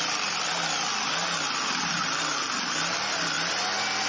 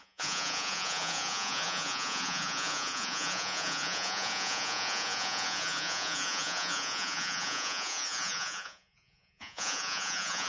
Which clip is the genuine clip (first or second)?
first